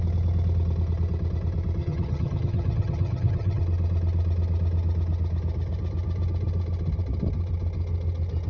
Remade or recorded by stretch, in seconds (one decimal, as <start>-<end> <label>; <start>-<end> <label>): 0.0-1.8 recorded; 1.8-3.6 remade; 3.6-8.5 recorded